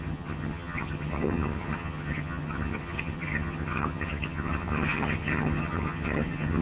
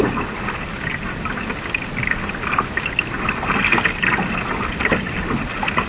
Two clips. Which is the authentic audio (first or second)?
second